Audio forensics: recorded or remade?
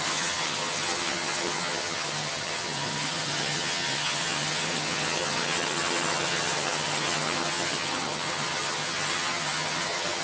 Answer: remade